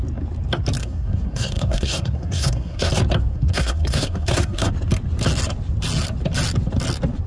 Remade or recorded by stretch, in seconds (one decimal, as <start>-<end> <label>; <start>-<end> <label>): 0.0-0.8 recorded; 0.8-2.9 remade; 2.9-3.3 recorded; 3.3-4.7 remade; 4.7-7.3 recorded